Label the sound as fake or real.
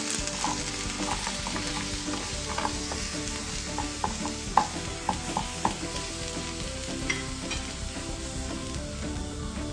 real